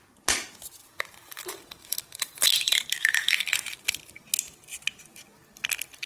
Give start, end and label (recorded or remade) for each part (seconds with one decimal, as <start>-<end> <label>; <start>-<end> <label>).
0.0-0.8 recorded; 0.8-4.3 remade; 4.3-6.1 recorded